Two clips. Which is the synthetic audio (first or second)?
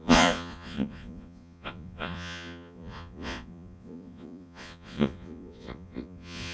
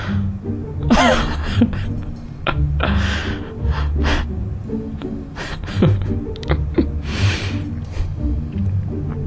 first